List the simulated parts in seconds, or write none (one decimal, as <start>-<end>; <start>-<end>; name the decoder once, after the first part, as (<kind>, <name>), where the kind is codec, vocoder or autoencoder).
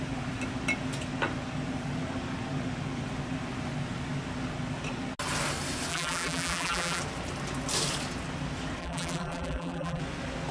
5.9-7.0 (vocoder, BigVGAN v2); 8.8-10.0